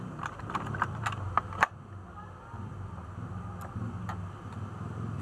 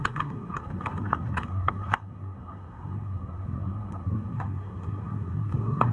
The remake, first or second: second